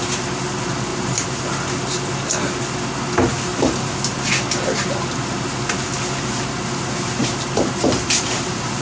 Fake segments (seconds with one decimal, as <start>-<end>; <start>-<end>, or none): 0.9-1.4; 7.2-8.4